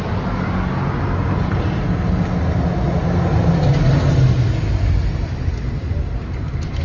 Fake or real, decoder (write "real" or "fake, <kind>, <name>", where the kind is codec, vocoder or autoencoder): real